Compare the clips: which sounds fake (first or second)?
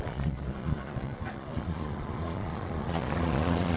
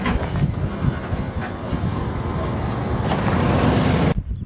first